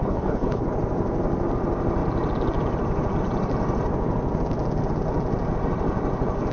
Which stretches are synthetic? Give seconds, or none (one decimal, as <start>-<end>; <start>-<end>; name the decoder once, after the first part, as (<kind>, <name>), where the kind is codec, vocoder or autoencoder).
0.0-0.6 (codec, HILCodec)